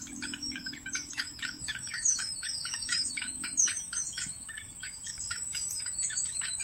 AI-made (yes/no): yes